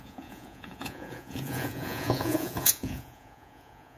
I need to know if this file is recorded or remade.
remade